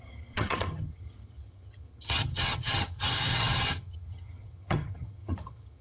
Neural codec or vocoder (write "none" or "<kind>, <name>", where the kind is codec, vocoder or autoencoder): vocoder, HiFi-GAN